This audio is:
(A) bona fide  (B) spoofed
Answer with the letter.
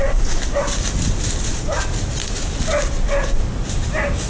A